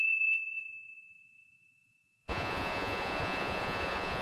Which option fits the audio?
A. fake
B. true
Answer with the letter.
A